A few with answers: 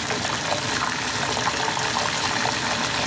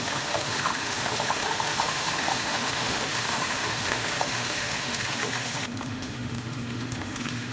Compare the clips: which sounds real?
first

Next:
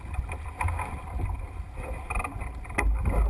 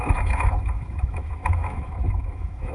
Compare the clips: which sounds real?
first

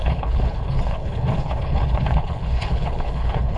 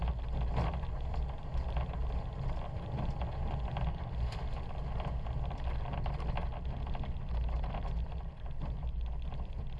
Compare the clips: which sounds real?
second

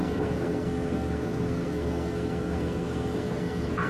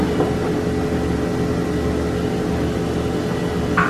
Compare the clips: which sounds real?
second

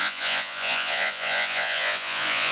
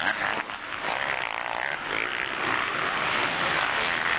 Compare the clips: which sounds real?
second